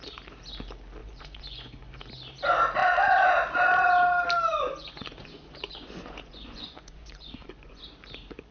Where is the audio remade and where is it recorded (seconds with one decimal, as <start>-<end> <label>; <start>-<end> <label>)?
0.0-1.0 recorded; 1.0-2.0 remade; 2.0-4.5 recorded; 4.5-7.8 remade; 7.8-8.5 recorded

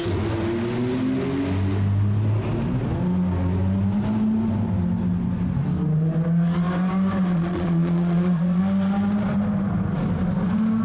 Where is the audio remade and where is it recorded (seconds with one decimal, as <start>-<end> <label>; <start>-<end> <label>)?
0.0-7.3 recorded; 7.3-8.6 remade; 8.6-10.8 recorded

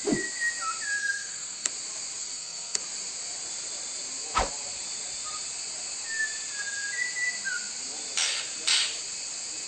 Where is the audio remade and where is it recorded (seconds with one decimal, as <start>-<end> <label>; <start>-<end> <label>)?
0.0-1.0 recorded; 1.0-1.7 remade; 1.7-2.2 recorded; 2.2-2.8 remade; 2.8-9.7 recorded

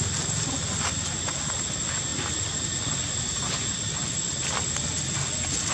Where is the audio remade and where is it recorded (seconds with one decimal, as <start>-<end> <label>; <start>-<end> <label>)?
0.0-5.7 recorded